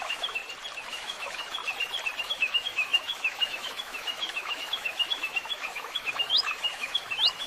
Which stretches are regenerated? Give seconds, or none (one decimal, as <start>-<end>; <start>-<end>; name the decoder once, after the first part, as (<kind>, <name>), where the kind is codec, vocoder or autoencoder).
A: 0.0-0.4 (autoencoder, DAC-VAE); 0.9-1.6; 2.2-7.5